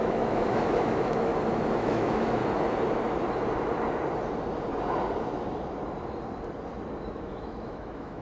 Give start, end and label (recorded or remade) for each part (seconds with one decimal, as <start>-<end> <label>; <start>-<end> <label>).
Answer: 0.0-1.3 remade; 1.3-1.8 recorded; 1.8-2.4 remade; 2.4-7.1 recorded; 7.1-8.2 remade